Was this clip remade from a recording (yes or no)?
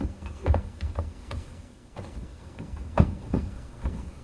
yes